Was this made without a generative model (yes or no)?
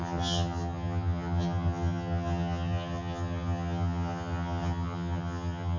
no